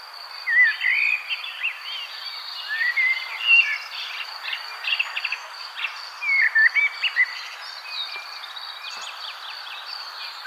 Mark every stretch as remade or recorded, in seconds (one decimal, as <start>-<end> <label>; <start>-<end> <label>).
0.0-10.5 recorded